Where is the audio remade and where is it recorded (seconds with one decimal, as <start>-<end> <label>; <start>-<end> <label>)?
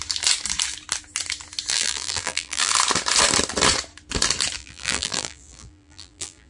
0.0-1.7 recorded; 1.7-2.7 remade; 2.7-4.6 recorded; 4.6-6.5 remade